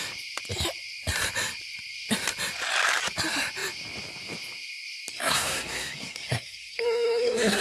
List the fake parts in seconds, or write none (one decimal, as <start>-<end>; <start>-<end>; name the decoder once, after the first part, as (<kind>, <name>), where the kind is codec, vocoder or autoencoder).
5.1-7.6 (codec, SNAC)